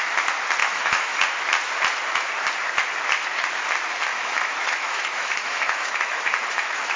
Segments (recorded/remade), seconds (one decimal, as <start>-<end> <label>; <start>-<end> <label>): 0.0-0.6 recorded; 0.6-1.2 remade; 1.2-4.1 recorded; 4.1-7.0 remade